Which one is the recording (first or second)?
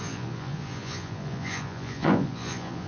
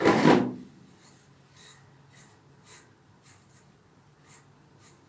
second